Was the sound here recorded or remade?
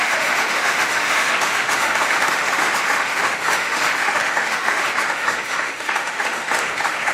remade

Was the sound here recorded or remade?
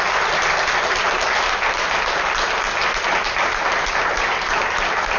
recorded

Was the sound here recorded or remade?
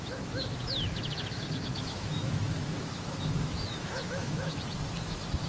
remade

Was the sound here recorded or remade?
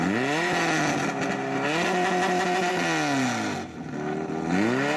recorded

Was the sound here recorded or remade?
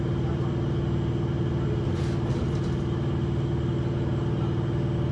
recorded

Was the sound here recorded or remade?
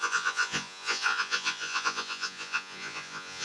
remade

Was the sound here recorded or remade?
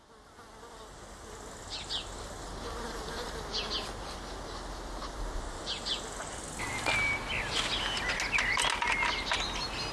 recorded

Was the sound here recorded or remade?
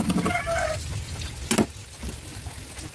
recorded